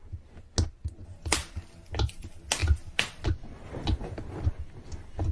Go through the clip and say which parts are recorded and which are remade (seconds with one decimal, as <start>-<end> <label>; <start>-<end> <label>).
0.0-5.3 recorded